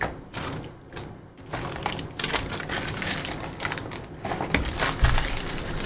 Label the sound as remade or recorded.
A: recorded